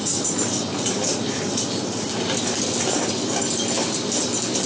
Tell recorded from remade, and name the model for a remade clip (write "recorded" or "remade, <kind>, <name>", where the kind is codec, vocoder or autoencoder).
recorded